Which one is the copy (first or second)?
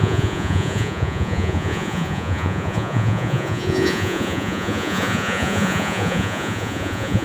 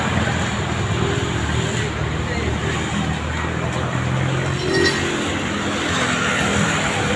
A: first